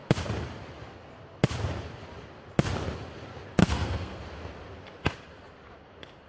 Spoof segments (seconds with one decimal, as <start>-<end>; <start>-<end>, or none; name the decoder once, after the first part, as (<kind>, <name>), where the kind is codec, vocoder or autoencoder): 3.6-4.2 (codec, SNAC)